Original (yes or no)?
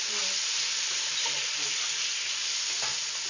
yes